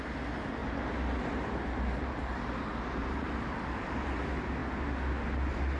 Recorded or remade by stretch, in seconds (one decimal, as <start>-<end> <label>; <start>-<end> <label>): 0.0-0.6 recorded; 0.6-4.1 remade; 4.1-5.8 recorded